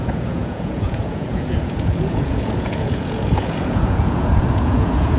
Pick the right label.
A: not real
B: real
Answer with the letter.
A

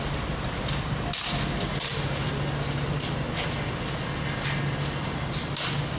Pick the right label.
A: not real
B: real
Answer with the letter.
B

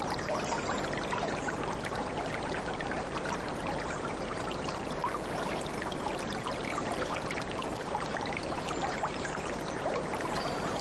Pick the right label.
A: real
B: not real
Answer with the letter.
B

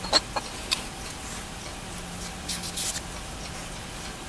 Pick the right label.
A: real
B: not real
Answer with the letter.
A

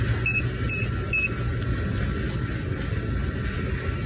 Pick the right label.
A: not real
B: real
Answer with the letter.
B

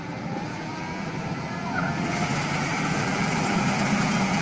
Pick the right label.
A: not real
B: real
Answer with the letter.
A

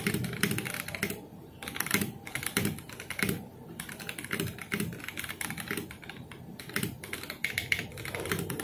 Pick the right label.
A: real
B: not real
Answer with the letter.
A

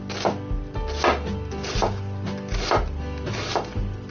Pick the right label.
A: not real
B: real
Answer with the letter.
B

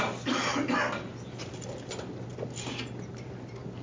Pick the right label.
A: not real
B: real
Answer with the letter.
B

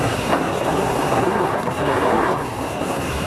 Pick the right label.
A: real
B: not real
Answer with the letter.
B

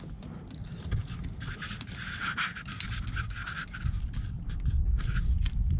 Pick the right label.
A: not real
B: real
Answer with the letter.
B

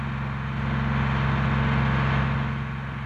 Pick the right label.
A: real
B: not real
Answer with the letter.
A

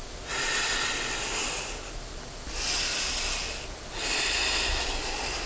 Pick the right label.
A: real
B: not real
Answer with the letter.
A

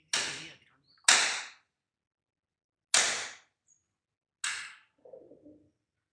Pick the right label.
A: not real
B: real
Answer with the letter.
B